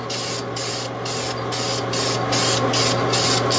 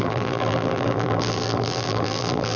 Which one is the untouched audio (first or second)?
first